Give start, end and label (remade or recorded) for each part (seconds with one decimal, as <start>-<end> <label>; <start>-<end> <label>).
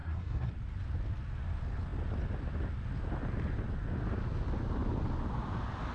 0.0-0.5 remade; 0.5-5.9 recorded